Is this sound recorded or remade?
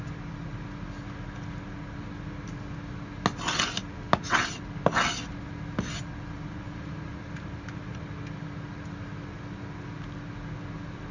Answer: recorded